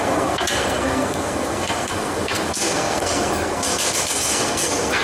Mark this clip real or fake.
fake